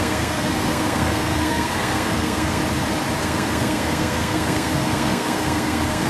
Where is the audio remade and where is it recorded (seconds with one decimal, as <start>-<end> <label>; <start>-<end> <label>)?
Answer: 0.0-2.6 remade; 2.6-3.2 recorded; 3.2-6.1 remade